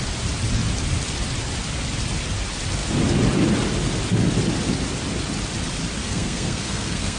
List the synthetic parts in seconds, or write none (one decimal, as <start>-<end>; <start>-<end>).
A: 6.0-7.2